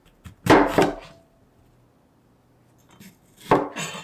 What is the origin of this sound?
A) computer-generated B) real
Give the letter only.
B